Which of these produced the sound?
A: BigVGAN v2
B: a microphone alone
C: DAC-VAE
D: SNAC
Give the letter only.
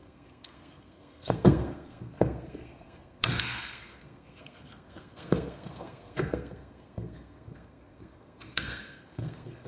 D